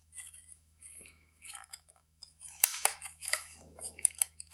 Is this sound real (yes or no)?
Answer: no